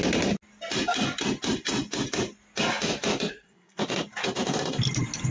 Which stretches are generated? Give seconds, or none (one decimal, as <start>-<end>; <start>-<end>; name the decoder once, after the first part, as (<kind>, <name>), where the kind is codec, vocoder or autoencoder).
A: 3.3-3.8 (codec, SNAC)